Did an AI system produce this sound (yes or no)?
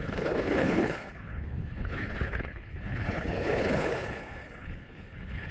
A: yes